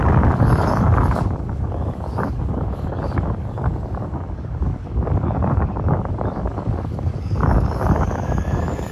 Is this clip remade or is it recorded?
remade